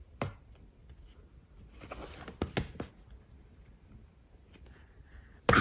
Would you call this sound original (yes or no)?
yes